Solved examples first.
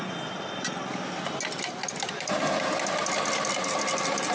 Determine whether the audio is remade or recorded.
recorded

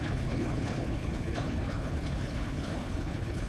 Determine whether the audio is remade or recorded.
remade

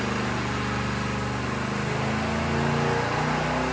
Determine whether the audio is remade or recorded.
recorded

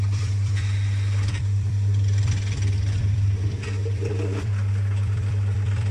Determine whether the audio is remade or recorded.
remade